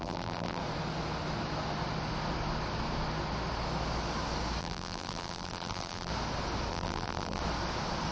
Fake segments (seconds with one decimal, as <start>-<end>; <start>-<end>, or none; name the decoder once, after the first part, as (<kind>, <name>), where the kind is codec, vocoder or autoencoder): 0.0-0.6 (vocoder, BigVGAN v2); 4.6-6.1; 6.7-7.4